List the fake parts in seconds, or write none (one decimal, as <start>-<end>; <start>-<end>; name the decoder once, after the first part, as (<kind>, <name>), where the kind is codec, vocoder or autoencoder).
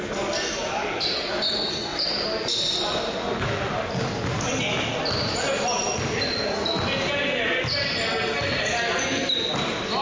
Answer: none